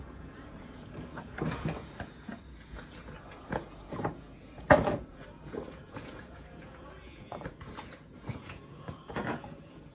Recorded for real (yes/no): no